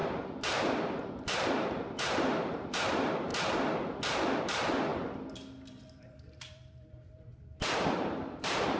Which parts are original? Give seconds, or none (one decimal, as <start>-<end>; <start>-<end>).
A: 3.3-4.4; 4.9-5.7